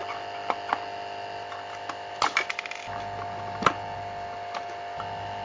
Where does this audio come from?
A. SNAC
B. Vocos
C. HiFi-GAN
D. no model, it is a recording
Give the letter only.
D